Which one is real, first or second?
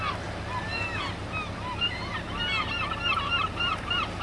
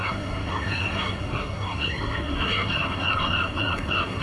first